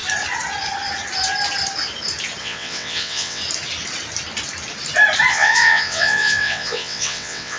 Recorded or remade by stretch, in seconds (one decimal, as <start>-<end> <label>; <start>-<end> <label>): 0.0-2.4 recorded; 2.4-3.4 remade; 3.4-5.3 recorded; 5.3-7.6 remade